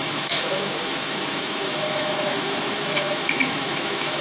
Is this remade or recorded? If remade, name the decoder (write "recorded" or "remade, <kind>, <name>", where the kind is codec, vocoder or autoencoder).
remade, autoencoder, DAC-VAE